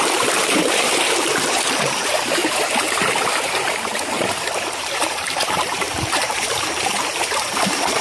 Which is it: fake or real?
fake